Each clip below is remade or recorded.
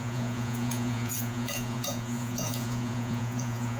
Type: remade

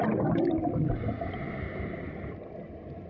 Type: recorded